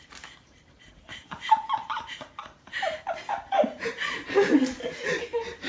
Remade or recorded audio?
remade